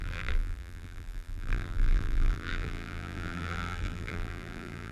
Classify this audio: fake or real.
fake